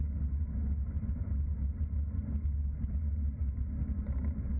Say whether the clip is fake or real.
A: real